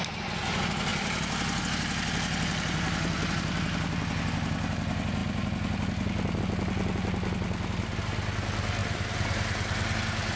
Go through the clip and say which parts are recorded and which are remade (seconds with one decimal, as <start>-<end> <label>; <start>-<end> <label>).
0.0-0.9 recorded; 0.9-1.6 remade; 1.6-8.8 recorded; 8.8-10.0 remade; 10.0-10.4 recorded